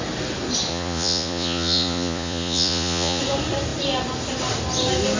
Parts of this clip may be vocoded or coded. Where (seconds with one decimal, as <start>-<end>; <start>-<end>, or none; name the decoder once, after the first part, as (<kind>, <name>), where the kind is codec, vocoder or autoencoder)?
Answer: 0.7-3.2 (vocoder, Vocos)